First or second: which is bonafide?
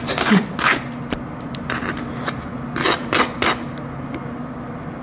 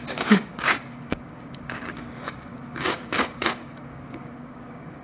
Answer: first